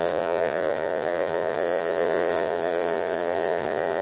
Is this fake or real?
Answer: fake